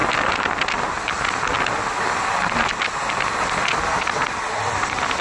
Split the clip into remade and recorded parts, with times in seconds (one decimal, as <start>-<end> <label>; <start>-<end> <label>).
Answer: 0.0-5.2 recorded